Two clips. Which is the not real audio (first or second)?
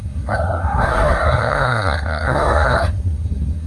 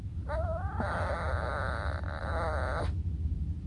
first